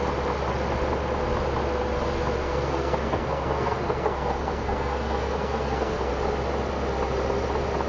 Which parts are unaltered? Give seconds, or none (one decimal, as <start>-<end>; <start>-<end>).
0.0-2.4; 6.1-7.9